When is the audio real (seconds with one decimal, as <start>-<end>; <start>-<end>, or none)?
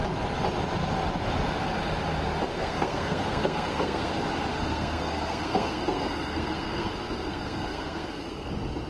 0.0-2.5; 4.1-4.5; 8.5-8.9